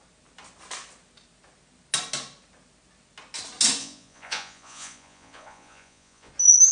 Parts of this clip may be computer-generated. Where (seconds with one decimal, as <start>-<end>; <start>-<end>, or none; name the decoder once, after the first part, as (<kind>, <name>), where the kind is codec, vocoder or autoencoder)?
3.8-6.3 (vocoder, Vocos)